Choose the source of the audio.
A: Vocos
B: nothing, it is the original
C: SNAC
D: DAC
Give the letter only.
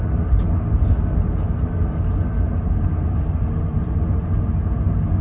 B